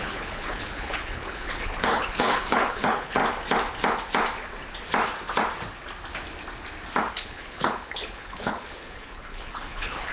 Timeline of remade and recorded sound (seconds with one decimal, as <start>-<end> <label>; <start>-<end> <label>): 0.0-3.2 remade; 3.2-7.1 recorded; 7.1-10.1 remade